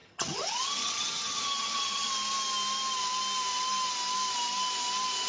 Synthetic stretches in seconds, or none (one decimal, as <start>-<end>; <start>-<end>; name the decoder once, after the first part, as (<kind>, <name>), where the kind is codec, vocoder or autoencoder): 0.0-2.1 (vocoder, HiFi-GAN)